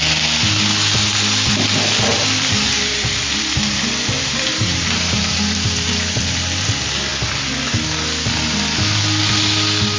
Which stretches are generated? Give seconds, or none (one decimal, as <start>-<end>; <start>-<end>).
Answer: 2.1-5.9